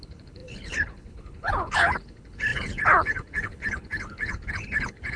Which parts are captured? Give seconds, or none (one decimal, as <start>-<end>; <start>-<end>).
none